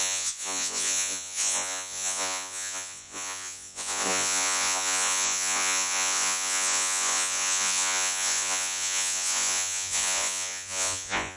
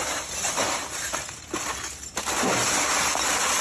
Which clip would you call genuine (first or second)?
second